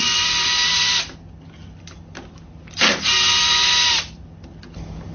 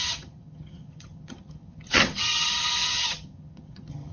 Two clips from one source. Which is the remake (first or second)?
second